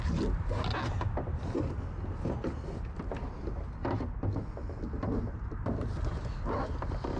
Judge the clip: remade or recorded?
recorded